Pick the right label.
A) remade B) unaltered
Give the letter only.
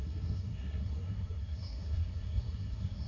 A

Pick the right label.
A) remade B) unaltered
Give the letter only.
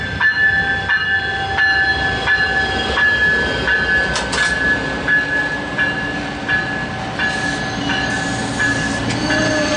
B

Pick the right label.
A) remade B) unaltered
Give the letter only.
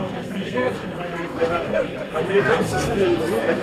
A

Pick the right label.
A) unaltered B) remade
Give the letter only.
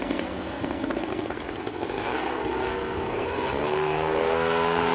B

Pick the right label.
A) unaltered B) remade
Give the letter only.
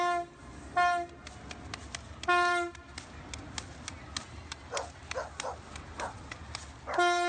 A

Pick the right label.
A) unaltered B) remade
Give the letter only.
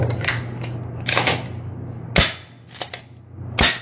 A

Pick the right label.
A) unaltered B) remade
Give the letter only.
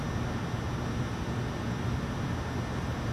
A